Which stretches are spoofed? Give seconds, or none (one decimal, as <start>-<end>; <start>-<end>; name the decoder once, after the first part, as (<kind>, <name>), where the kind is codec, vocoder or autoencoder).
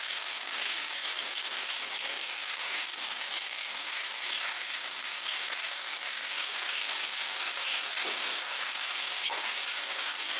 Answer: 0.0-10.4 (codec, DAC)